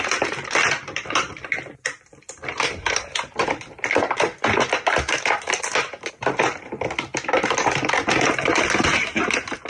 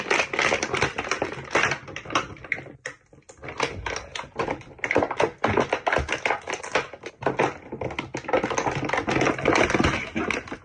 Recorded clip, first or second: second